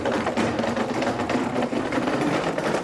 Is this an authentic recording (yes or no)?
no